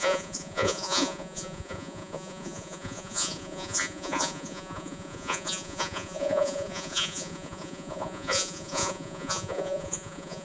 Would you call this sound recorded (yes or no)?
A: no